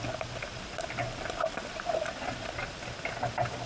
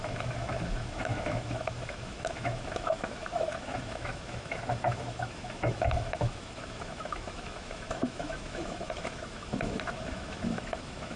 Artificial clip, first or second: second